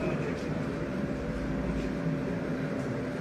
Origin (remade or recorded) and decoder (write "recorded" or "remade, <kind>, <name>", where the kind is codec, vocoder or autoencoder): remade, vocoder, BigVGAN v2